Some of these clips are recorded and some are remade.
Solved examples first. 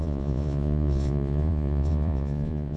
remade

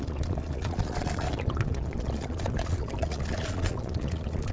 remade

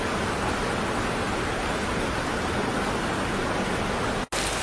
recorded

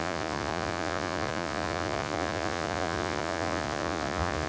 remade